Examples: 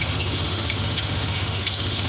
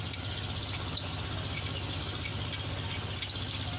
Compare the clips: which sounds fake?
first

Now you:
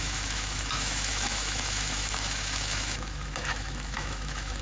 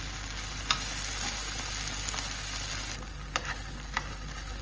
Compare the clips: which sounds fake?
first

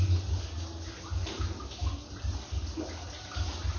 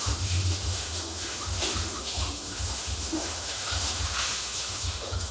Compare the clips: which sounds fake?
second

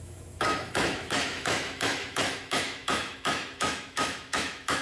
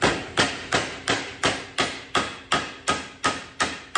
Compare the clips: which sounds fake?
first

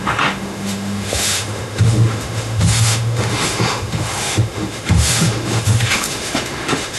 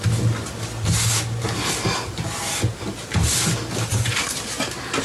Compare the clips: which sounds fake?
first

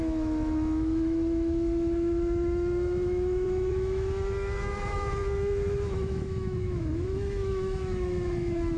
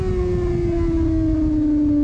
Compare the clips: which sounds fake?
first